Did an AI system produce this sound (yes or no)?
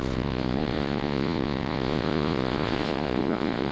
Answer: yes